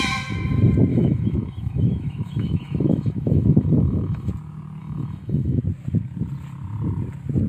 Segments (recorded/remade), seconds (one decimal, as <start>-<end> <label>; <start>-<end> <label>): 0.0-0.9 recorded; 0.9-4.3 remade; 4.3-4.8 recorded; 4.8-5.6 remade; 5.6-7.5 recorded